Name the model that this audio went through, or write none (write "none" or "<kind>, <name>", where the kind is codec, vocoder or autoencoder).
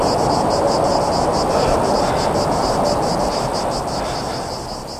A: none